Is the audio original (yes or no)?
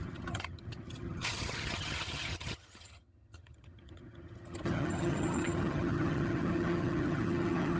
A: no